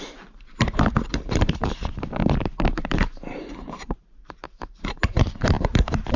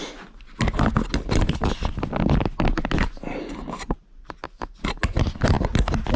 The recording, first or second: second